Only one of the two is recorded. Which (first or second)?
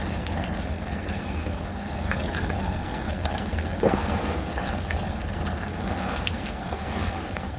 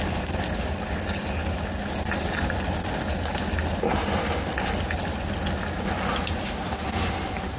second